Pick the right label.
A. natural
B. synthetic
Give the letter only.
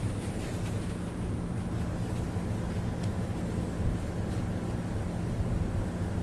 A